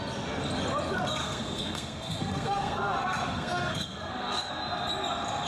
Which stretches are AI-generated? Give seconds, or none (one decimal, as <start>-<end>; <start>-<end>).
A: 1.2-4.5